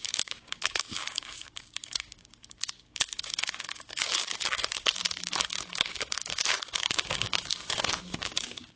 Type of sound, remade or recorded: remade